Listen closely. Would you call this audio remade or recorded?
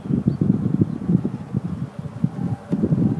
recorded